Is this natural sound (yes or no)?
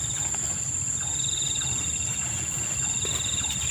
yes